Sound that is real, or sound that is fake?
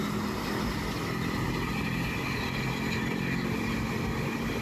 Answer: real